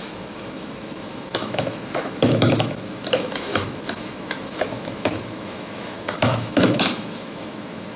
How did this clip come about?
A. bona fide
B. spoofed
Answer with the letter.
B